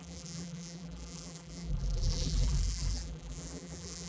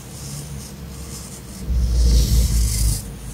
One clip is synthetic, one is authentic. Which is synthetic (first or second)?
first